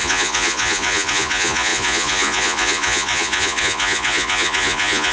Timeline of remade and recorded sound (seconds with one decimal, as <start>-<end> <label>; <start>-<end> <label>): 0.0-5.1 remade